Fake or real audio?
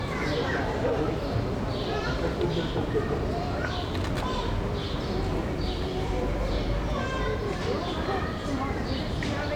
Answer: fake